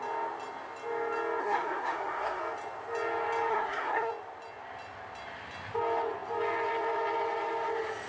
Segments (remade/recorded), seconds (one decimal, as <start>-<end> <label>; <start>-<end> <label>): 0.0-1.4 recorded; 1.4-2.4 remade; 2.4-3.5 recorded; 3.5-4.1 remade; 4.1-8.1 recorded